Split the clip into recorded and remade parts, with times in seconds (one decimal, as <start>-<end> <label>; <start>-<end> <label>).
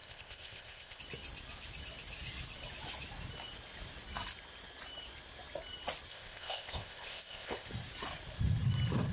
0.0-1.0 remade; 1.0-6.1 recorded; 6.1-7.7 remade; 7.7-9.1 recorded